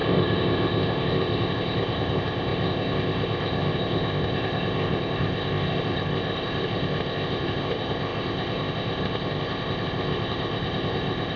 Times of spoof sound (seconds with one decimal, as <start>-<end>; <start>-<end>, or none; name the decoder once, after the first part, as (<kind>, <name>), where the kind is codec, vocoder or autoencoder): 0.0-11.4 (codec, ZipCodec)